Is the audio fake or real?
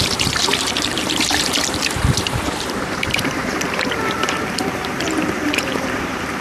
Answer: fake